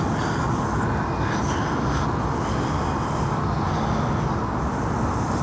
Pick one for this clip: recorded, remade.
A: recorded